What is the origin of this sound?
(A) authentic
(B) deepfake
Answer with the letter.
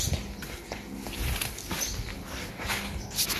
A